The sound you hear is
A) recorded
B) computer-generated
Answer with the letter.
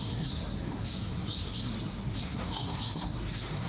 B